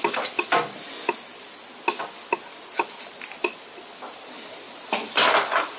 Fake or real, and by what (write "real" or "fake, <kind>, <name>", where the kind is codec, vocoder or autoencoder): real